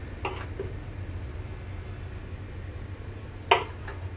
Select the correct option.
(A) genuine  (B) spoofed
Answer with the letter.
A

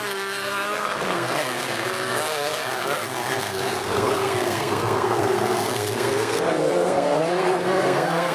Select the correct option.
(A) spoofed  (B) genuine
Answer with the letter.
A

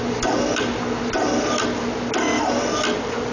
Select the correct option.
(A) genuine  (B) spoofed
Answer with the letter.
A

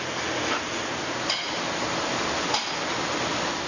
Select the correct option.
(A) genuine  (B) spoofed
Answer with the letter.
A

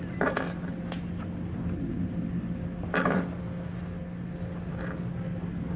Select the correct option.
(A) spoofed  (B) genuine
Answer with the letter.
B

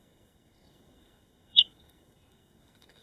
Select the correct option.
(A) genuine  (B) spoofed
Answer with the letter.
B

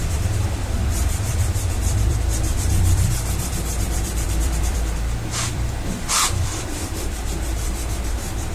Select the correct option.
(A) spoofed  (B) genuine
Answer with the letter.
A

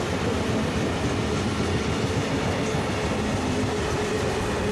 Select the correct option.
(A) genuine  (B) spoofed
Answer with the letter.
A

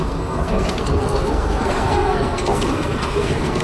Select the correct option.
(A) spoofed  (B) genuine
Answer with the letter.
A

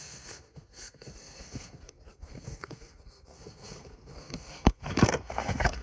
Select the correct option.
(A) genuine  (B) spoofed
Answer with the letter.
B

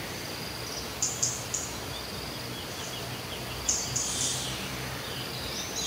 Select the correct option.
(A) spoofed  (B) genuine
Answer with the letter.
B